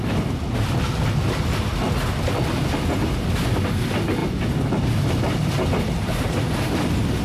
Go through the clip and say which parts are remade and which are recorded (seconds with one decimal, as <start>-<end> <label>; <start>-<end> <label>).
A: 0.0-7.2 recorded